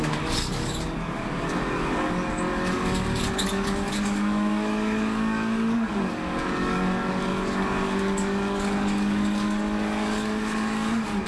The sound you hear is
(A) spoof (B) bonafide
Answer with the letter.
A